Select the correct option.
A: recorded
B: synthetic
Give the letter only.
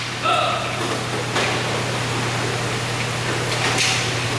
A